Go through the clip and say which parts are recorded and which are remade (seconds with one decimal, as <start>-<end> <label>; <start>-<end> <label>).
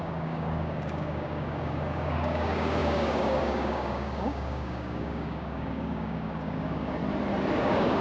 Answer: 0.0-7.0 remade; 7.0-7.6 recorded; 7.6-8.0 remade